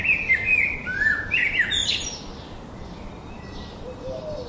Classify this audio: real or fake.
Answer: real